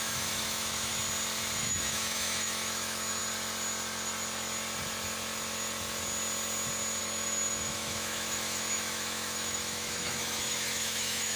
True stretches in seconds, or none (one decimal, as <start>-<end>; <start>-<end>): 0.9-1.6; 3.2-7.0

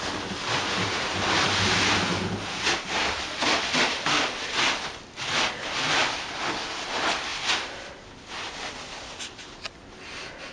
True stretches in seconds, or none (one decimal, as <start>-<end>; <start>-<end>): 0.0-2.1; 5.2-10.5

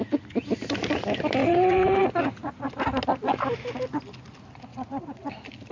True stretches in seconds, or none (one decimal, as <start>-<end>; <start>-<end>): 0.0-1.4; 2.0-4.7; 5.3-5.7

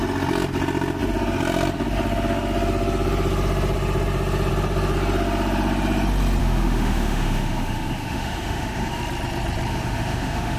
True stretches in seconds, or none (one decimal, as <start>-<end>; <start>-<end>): 0.0-6.4; 9.0-9.7